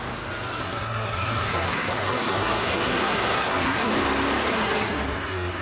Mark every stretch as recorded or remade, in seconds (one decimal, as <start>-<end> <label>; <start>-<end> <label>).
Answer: 0.0-0.6 recorded; 0.6-3.9 remade; 3.9-4.5 recorded; 4.5-5.6 remade